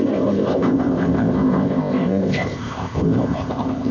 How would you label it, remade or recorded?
remade